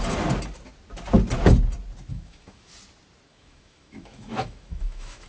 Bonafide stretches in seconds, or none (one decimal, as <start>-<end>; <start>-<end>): 0.0-2.1; 2.7-3.3